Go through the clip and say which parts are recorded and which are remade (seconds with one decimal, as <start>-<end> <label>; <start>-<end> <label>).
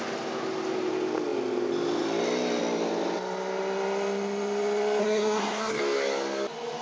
0.0-5.0 recorded; 5.0-5.8 remade; 5.8-6.8 recorded